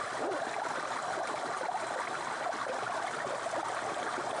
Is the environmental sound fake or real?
real